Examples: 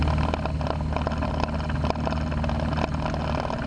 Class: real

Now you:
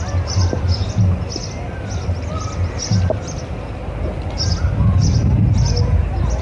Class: real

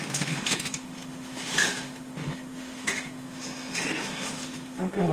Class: fake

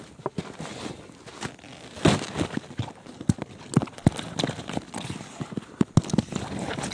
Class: real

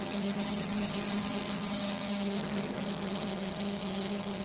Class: fake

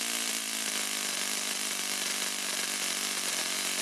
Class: real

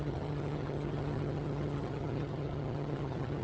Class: fake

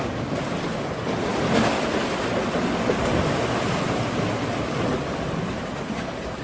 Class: real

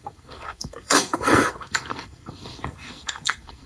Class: fake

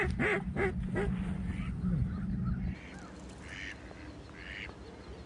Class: real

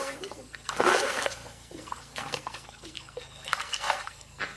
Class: fake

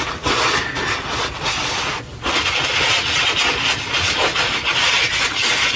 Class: real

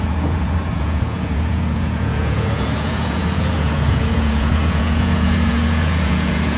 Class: fake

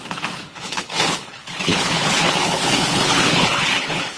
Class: fake